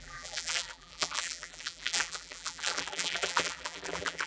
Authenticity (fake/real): fake